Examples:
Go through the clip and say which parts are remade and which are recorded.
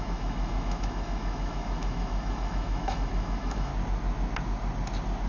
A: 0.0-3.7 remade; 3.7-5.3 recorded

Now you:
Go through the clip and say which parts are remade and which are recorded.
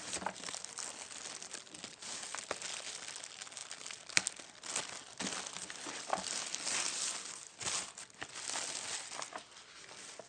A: 0.0-10.3 recorded